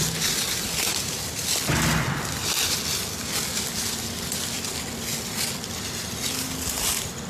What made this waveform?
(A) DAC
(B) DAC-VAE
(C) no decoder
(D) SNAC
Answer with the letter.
C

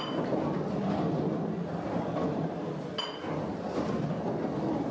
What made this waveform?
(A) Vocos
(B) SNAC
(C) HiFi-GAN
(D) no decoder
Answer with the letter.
D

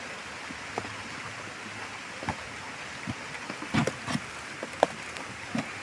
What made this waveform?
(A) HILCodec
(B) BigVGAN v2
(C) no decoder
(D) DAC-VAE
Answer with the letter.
C